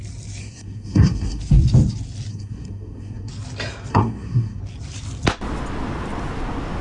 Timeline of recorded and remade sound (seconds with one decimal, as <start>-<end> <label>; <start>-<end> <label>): 0.0-0.4 recorded; 0.4-1.4 remade; 1.4-2.3 recorded; 2.3-3.3 remade; 3.3-3.9 recorded; 3.9-4.6 remade; 4.6-6.8 recorded